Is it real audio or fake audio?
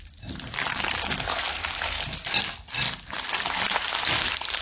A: real